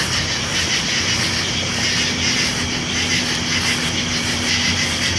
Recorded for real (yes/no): yes